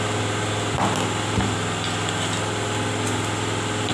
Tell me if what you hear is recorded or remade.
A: recorded